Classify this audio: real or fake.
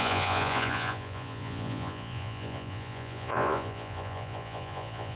fake